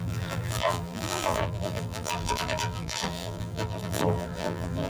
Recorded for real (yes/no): no